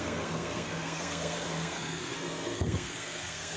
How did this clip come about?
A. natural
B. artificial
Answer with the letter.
B